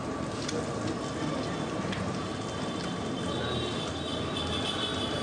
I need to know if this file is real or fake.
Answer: real